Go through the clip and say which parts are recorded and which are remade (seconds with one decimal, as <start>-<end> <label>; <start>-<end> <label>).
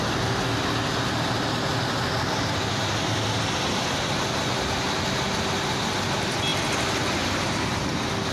0.0-8.3 recorded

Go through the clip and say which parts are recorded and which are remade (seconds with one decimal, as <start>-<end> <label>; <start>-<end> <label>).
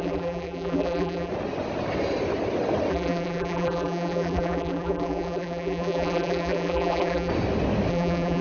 0.0-1.3 remade; 1.3-2.9 recorded; 2.9-7.3 remade; 7.3-7.9 recorded; 7.9-8.4 remade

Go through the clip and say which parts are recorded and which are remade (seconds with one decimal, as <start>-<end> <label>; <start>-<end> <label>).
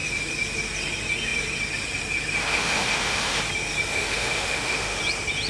0.0-2.5 recorded; 2.5-3.4 remade; 3.4-3.9 recorded; 3.9-5.0 remade; 5.0-5.5 recorded